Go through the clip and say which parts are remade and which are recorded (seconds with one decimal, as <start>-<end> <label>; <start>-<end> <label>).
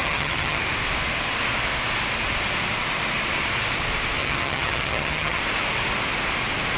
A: 0.0-0.6 remade; 0.6-4.2 recorded; 4.2-5.4 remade; 5.4-6.8 recorded